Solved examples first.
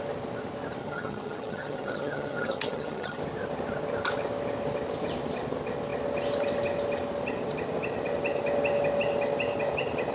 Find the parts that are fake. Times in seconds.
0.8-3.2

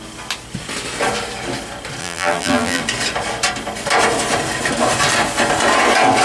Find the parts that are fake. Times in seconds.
2.0-2.8

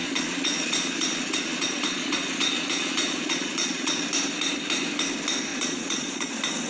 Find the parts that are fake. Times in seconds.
0.0-4.0; 5.5-6.3

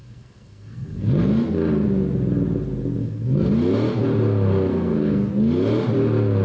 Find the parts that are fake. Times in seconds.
0.0-1.1; 3.0-3.5; 4.7-5.3

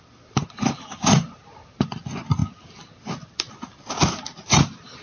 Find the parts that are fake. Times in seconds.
none

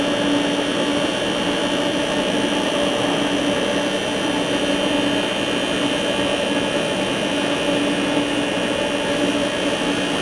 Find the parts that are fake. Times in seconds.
none

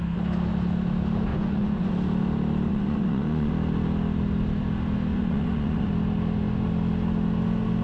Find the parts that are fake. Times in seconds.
1.3-1.9; 2.7-3.5; 5.1-5.9